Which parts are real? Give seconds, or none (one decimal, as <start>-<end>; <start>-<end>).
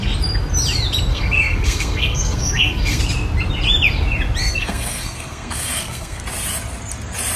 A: 0.0-1.1; 3.0-4.4; 6.2-7.4